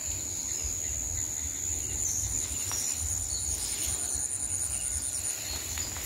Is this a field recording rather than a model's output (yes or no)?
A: yes